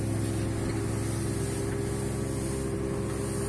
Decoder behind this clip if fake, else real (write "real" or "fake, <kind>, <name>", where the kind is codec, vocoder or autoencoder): real